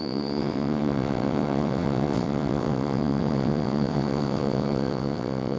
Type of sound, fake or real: fake